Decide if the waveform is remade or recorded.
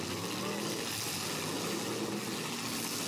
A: recorded